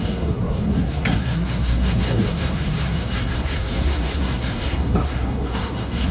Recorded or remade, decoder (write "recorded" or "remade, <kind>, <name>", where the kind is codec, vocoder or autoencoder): remade, codec, SNAC